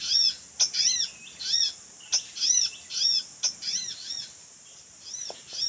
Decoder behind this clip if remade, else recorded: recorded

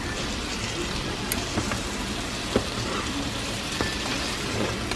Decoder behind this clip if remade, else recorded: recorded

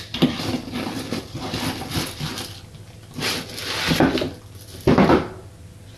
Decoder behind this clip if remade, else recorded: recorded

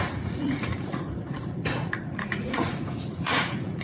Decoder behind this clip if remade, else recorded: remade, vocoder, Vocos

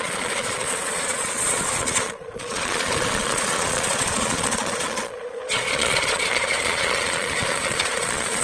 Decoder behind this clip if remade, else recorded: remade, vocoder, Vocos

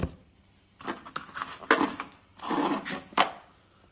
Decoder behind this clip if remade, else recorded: recorded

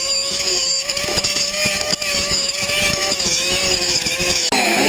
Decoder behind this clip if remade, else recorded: remade, autoencoder, DAC-VAE